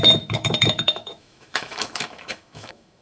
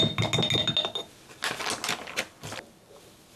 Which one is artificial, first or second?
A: first